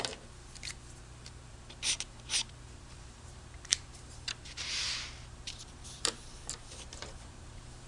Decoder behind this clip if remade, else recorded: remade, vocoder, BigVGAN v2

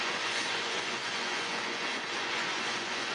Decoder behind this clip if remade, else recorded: remade, vocoder, Vocos